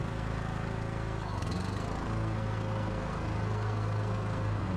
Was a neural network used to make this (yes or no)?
yes